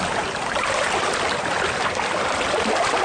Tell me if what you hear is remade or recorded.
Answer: recorded